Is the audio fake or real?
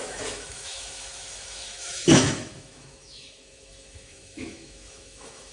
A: fake